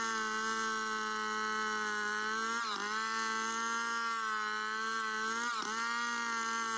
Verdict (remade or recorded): recorded